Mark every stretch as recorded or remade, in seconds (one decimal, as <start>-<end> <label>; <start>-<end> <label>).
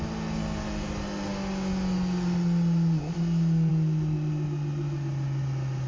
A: 0.0-5.9 recorded